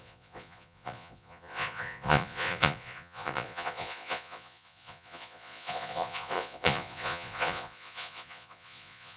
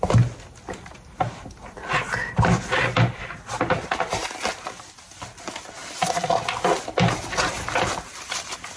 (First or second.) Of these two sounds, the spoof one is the first